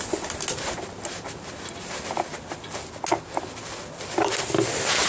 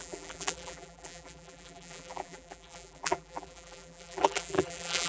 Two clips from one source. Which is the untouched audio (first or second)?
first